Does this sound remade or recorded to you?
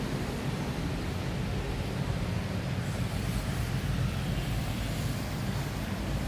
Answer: remade